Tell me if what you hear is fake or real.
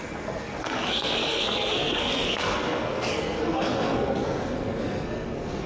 fake